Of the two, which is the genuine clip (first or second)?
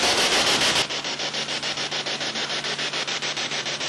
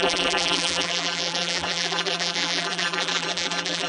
first